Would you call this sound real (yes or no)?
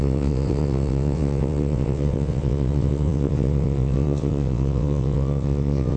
no